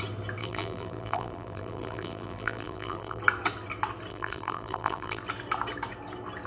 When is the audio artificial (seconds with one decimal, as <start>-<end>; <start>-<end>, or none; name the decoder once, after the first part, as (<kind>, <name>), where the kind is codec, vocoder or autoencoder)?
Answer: 0.4-3.2 (vocoder, BigVGAN v2); 4.1-5.2